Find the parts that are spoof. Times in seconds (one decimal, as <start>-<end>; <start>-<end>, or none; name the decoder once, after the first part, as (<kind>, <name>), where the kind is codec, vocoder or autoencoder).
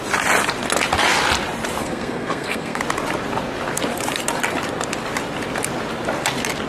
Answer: 1.8-2.8 (codec, SNAC)